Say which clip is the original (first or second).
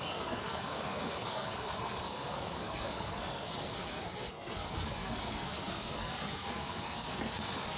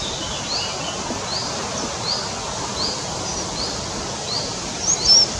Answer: second